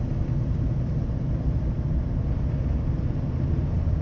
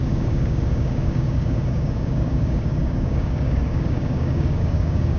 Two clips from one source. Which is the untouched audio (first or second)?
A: first